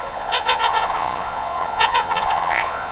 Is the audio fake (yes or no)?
yes